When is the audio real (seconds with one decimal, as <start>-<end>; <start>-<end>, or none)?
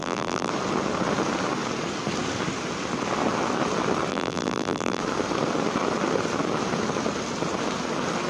0.5-4.1; 5.0-8.3